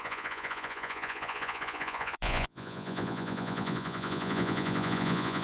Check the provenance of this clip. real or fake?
fake